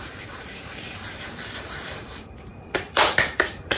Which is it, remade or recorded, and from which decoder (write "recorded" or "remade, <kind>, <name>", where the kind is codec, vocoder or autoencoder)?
remade, vocoder, BigVGAN v2